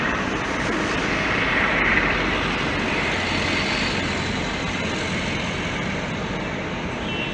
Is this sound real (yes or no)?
yes